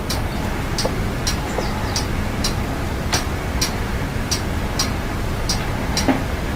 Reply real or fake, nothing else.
real